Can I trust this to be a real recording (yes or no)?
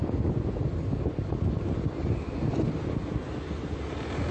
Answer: yes